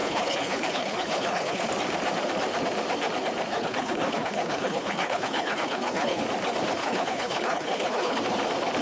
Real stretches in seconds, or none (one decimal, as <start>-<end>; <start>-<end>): 1.7-3.5; 6.2-6.8; 8.2-8.8